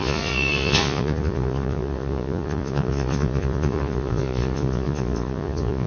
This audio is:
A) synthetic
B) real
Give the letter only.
A